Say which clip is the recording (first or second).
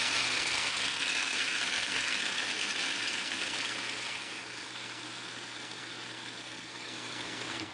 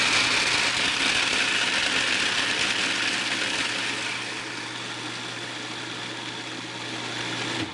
second